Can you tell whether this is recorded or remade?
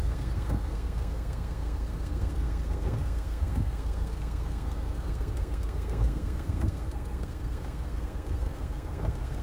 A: remade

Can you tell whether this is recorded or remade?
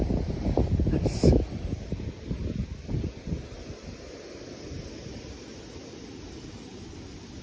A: recorded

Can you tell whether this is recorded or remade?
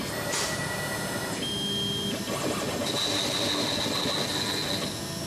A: recorded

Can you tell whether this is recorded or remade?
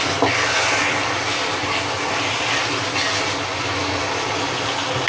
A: recorded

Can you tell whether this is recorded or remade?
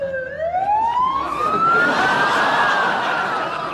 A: recorded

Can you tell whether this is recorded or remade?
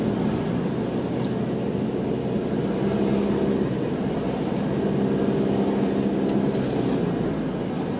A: recorded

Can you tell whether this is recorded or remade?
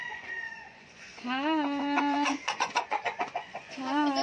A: remade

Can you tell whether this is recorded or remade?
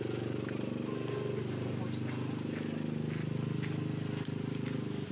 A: recorded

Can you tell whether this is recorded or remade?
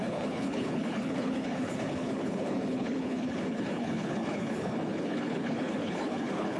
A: remade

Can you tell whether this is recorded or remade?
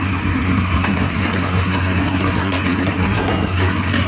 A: remade